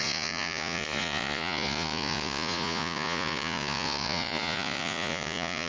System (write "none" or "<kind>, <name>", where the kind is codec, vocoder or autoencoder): vocoder, Vocos